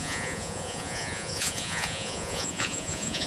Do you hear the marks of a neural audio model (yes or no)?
yes